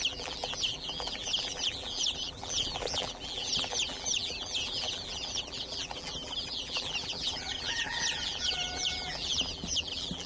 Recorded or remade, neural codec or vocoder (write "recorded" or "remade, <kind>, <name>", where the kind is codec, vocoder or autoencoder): remade, vocoder, BigVGAN v2